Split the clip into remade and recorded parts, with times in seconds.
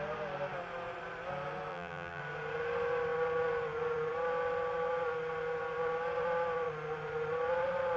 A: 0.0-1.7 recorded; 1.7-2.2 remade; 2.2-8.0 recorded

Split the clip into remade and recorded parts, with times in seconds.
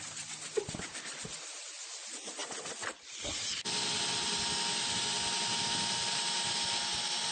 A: 0.0-7.3 recorded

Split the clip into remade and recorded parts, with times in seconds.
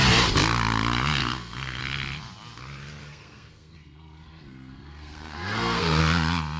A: 0.0-1.2 recorded; 1.2-1.8 remade; 1.8-3.0 recorded; 3.0-6.0 remade; 6.0-6.6 recorded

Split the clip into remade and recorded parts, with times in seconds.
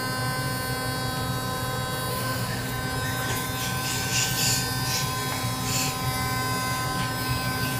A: 0.0-2.1 recorded; 2.1-2.7 remade; 2.7-7.8 recorded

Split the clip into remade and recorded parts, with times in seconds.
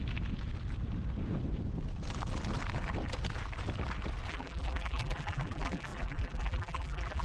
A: 0.0-4.3 recorded; 4.3-7.2 remade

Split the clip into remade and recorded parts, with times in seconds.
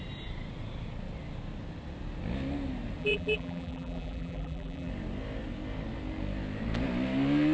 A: 0.0-3.0 recorded; 3.0-4.9 remade; 4.9-7.5 recorded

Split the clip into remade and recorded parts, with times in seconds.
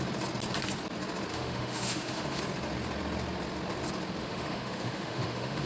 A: 0.0-1.3 recorded; 1.3-2.4 remade; 2.4-4.2 recorded; 4.2-5.7 remade